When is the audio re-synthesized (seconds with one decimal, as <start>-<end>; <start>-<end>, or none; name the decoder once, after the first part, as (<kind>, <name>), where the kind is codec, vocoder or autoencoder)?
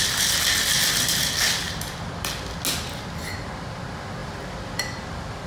none